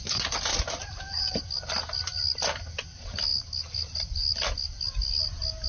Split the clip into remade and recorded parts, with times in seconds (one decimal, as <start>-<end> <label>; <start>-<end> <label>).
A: 0.0-0.5 recorded; 0.5-1.4 remade; 1.4-5.7 recorded